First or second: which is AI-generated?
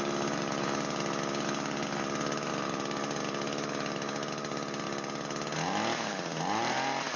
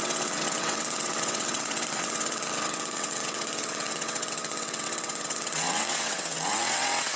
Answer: second